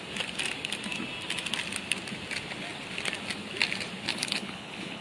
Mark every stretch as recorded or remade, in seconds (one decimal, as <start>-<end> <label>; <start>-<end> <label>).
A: 0.0-4.1 recorded; 4.1-5.0 remade